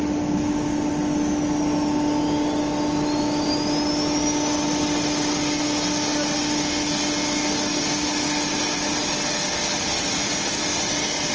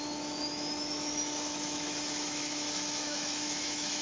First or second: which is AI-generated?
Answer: second